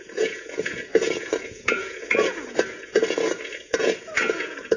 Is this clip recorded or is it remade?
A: remade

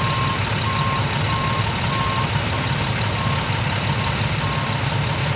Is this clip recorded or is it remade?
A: recorded